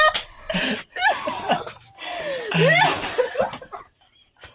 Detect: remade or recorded recorded